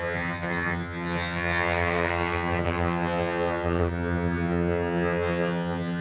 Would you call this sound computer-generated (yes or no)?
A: yes